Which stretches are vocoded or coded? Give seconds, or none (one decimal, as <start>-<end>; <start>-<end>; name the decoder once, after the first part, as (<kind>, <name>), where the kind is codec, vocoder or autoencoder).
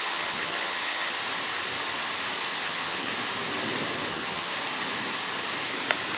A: 0.0-1.2 (vocoder, HiFi-GAN); 2.6-3.1; 4.1-4.5